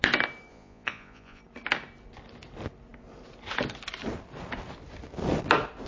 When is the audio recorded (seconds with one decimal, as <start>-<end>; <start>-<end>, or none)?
0.0-0.5; 1.4-5.9